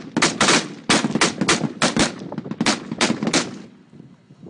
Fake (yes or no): no